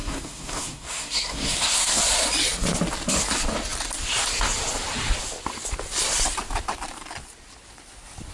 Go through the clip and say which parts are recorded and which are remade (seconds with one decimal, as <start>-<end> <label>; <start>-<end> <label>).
0.0-2.0 remade; 2.0-8.3 recorded